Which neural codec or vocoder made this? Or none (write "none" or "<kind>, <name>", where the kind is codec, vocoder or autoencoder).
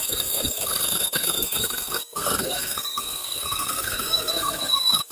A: codec, SNAC